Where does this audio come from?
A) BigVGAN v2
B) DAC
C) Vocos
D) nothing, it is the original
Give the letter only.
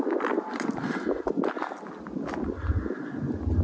D